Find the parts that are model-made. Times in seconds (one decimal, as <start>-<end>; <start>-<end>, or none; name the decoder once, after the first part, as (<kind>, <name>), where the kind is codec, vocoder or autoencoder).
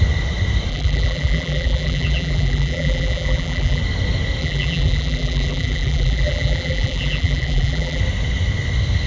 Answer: 0.7-3.8 (vocoder, BigVGAN v2); 4.4-8.0